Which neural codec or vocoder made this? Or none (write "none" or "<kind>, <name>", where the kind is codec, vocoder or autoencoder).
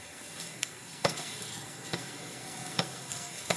codec, SNAC